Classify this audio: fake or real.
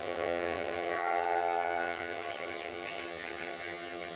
fake